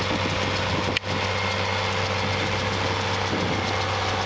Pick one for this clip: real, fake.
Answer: real